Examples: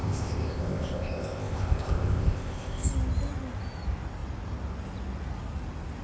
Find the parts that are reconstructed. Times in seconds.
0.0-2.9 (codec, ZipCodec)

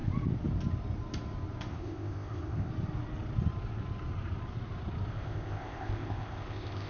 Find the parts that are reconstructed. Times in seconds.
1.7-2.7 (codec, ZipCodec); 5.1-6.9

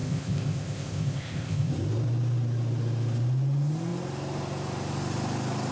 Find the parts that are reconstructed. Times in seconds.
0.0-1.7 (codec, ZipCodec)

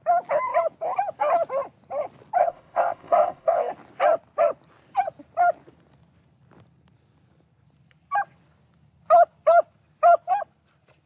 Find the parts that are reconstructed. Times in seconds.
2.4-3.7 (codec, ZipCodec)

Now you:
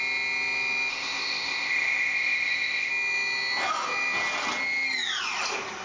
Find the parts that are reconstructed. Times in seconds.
0.9-2.9 (codec, ZipCodec)

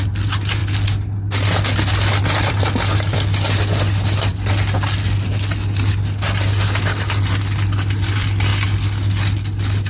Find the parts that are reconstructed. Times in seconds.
none

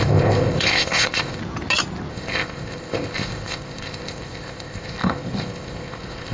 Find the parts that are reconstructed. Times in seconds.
0.0-1.4 (codec, ZipCodec); 2.1-6.3